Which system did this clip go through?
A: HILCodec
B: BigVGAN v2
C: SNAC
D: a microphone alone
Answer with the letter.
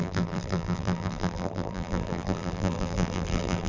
B